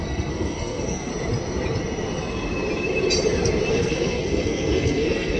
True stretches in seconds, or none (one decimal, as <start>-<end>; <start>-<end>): 1.1-3.7